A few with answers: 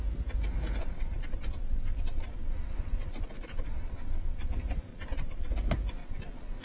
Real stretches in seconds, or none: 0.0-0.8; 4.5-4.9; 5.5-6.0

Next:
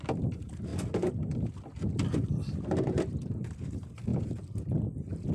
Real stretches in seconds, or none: 0.7-3.4; 4.1-5.3